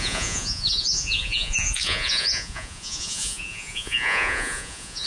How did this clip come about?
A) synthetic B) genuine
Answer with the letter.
A